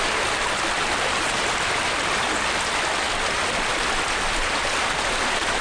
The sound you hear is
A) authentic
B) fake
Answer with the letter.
A